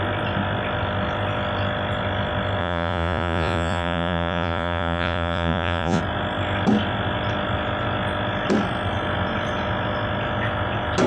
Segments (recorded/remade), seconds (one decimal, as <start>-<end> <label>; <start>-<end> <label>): 0.0-2.6 recorded; 2.6-6.0 remade; 6.0-11.1 recorded